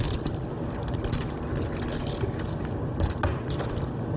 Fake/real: real